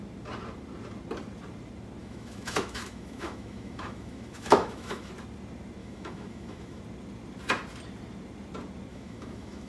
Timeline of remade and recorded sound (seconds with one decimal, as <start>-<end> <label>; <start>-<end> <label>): 0.0-2.0 recorded; 2.0-5.1 remade; 5.1-5.8 recorded; 5.8-6.8 remade; 6.8-8.9 recorded; 8.9-9.7 remade